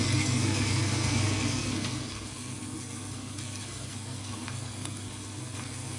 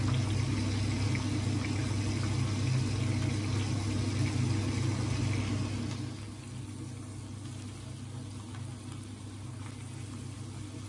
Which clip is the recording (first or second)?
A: second